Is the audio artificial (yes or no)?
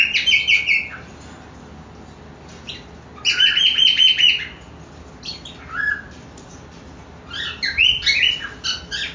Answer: no